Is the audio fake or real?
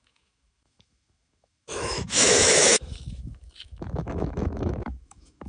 fake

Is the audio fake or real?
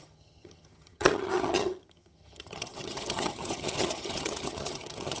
fake